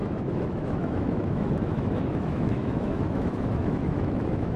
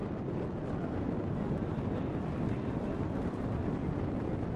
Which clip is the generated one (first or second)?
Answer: first